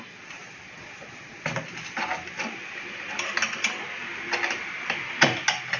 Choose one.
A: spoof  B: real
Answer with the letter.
B